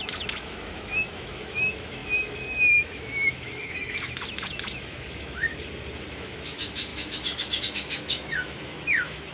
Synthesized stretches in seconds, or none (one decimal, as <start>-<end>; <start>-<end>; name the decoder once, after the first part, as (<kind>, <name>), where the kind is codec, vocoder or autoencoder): 0.0-5.5 (autoencoder, DAC-VAE); 6.1-9.3